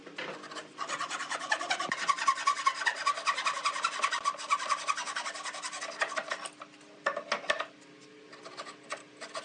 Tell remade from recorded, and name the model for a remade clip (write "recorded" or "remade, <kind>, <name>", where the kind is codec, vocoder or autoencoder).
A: recorded